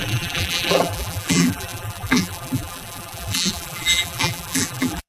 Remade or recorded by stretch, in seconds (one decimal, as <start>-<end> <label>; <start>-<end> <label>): 0.0-5.1 remade